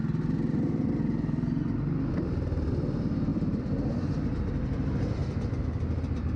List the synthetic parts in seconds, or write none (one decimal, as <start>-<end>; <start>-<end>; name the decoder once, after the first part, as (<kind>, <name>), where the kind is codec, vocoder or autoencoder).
2.1-6.4 (vocoder, BigVGAN v2)